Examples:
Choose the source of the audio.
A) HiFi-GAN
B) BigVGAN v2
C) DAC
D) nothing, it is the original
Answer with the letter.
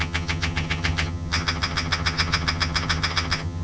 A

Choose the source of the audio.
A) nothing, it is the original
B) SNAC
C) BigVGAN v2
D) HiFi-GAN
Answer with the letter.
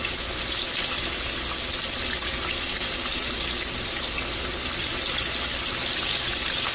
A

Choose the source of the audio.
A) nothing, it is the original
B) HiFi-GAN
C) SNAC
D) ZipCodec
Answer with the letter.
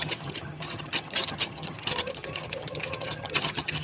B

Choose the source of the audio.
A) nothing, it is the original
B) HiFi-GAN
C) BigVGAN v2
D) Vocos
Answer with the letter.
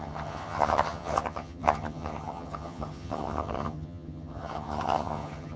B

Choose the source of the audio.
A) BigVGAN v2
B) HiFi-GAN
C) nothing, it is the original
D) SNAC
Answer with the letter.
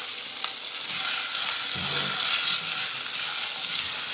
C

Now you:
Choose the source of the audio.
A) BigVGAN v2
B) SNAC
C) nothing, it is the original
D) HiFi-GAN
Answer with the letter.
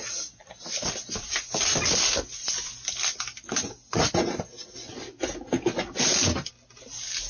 C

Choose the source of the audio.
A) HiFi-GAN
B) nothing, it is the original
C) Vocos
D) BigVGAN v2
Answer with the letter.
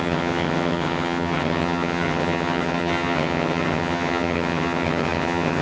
A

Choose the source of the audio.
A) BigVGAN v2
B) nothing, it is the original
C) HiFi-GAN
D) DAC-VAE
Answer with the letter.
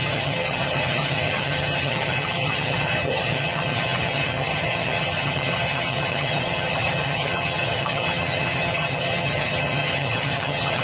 C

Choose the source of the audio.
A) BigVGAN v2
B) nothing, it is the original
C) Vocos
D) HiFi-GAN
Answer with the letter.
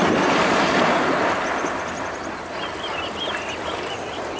B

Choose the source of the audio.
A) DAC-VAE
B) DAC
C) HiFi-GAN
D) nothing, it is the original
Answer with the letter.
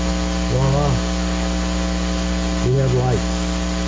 D